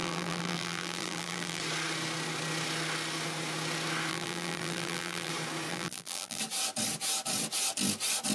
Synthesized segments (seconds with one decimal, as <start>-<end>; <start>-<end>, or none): 0.0-1.6; 4.1-5.3; 5.7-6.4